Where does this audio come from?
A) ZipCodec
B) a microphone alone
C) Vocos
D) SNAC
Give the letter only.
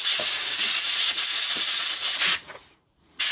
C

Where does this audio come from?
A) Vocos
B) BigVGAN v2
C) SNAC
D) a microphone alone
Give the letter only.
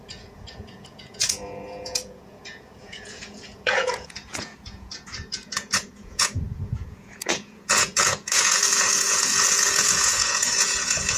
A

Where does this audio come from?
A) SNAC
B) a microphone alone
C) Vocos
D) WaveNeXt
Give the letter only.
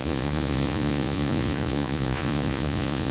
C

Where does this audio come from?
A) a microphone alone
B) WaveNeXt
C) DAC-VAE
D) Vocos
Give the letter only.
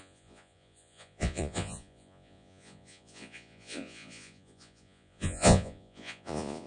D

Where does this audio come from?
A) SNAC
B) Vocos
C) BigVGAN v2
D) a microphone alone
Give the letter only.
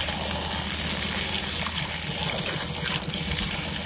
D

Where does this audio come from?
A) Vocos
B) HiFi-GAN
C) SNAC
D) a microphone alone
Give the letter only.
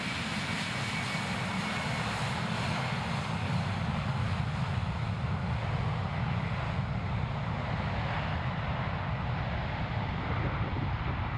D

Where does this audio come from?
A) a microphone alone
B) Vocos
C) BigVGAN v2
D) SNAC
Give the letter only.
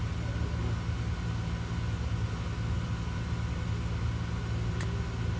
A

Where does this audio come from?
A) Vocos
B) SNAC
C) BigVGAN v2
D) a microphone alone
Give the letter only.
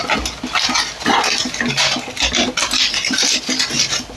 D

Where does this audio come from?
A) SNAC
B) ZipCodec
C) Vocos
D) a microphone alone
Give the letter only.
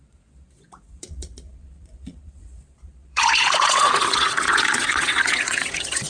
C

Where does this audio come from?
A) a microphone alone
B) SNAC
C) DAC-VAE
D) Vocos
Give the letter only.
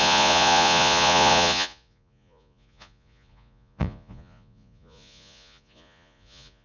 D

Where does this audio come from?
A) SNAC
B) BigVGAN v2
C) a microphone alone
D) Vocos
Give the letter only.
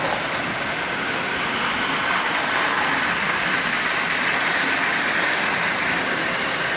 C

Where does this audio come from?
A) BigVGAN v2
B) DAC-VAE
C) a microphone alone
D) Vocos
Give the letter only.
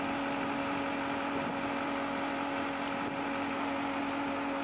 C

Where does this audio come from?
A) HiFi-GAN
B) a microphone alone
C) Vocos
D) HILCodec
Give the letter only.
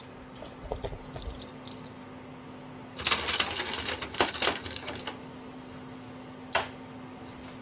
B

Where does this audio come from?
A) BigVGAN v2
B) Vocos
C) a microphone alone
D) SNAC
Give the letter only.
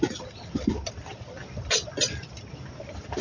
C